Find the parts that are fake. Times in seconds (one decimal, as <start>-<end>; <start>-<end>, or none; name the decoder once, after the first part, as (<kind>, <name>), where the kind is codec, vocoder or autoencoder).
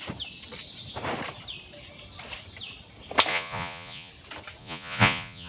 3.3-4.1 (vocoder, Vocos); 4.6-5.5